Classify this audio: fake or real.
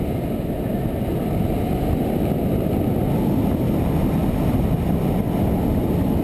real